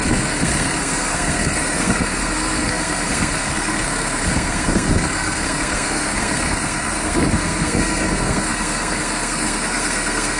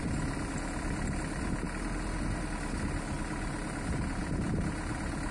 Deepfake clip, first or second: first